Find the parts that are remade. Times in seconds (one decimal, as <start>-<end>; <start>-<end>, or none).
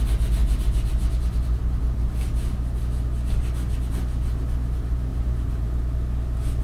5.1-5.8